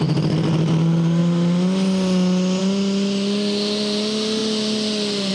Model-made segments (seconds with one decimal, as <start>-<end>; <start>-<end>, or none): none